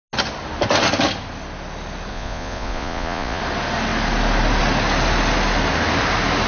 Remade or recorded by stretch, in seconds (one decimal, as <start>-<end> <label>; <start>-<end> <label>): 0.0-2.1 recorded; 2.1-3.4 remade; 3.4-6.5 recorded